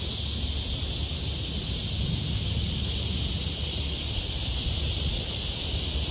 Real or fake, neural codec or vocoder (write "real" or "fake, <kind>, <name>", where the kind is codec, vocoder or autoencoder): real